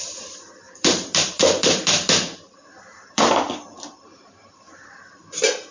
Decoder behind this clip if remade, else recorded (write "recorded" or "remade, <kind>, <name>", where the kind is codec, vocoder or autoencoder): remade, vocoder, BigVGAN v2